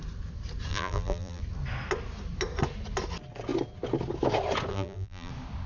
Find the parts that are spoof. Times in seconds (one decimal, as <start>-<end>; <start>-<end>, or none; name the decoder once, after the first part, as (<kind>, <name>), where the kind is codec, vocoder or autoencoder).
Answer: 0.7-1.4 (vocoder, BigVGAN v2); 4.7-5.3